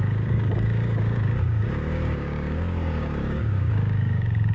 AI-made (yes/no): yes